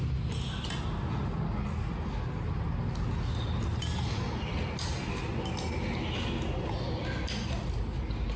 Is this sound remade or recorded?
recorded